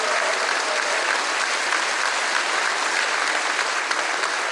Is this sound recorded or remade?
recorded